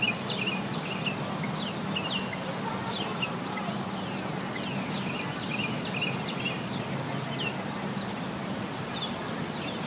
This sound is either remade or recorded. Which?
recorded